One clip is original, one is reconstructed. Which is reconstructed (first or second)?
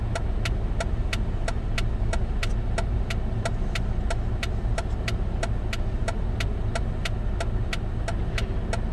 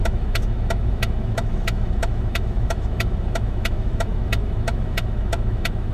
second